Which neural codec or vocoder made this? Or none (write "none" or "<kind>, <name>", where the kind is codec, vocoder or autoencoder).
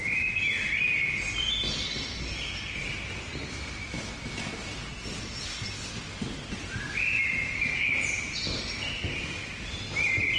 none